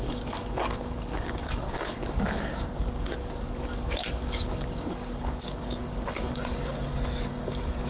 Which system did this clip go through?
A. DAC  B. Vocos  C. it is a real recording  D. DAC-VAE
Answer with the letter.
A